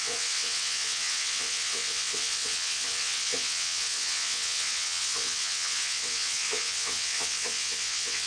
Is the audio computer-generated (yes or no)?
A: yes